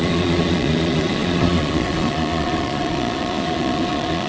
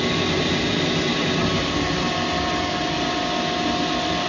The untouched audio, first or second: second